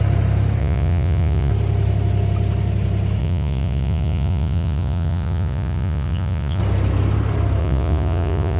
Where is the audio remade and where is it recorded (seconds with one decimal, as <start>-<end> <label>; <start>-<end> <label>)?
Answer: 0.0-0.6 recorded; 0.6-1.5 remade; 1.5-3.2 recorded; 3.2-6.6 remade; 6.6-7.6 recorded; 7.6-8.6 remade